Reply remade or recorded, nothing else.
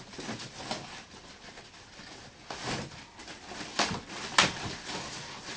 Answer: recorded